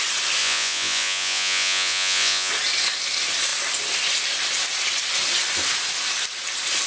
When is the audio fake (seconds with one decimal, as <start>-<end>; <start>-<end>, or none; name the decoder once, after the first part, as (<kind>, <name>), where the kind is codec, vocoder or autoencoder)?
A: 0.4-2.5 (vocoder, Vocos)

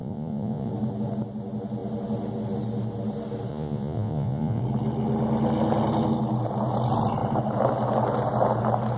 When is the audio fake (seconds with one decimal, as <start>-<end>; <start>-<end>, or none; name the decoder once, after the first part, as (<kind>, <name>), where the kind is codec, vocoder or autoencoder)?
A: 0.0-0.7 (vocoder, Vocos); 3.5-4.6

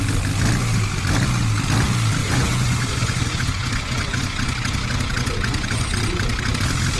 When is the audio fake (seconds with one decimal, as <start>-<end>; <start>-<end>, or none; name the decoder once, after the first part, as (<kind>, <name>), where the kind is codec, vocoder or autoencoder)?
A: 2.2-5.9 (vocoder, Vocos)